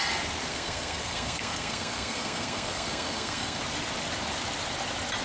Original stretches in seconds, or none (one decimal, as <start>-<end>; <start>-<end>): 0.0-0.5; 3.6-5.2

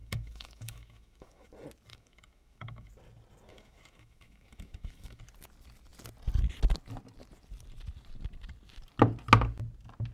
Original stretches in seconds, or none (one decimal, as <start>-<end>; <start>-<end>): 1.5-1.9; 2.9-3.5; 5.2-10.1

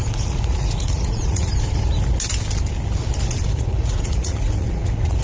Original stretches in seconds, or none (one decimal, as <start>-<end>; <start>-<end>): 1.5-3.5

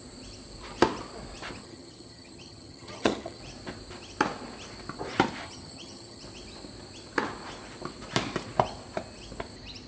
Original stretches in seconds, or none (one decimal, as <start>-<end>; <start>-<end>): 0.0-1.6; 3.4-5.4; 6.2-9.9

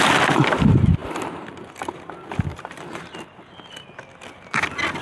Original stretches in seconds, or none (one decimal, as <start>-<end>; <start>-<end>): 0.0-2.5; 3.1-5.0

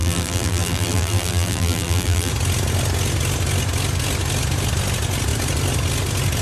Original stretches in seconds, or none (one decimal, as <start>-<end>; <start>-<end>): 2.3-6.4

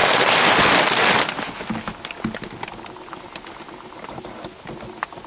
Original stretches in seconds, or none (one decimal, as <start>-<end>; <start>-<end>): 0.0-5.3